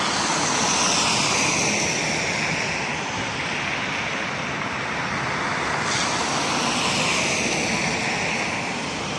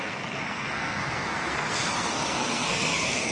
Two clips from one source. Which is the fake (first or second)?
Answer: second